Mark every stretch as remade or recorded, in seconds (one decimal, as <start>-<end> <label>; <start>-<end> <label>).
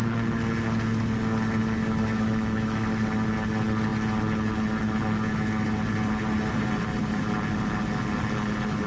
0.0-1.8 recorded; 1.8-2.9 remade; 2.9-8.9 recorded